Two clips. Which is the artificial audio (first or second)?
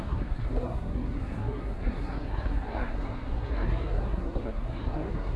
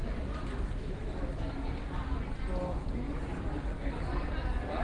first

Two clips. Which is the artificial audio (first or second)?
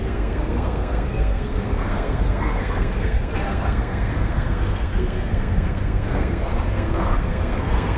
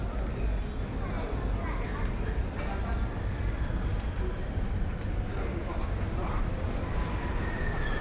first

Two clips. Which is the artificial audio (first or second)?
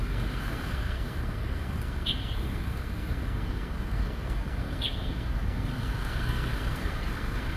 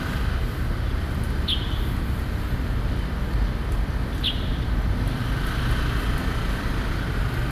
first